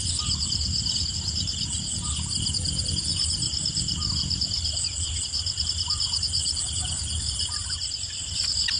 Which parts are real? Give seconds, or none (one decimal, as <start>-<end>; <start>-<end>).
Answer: 0.0-8.8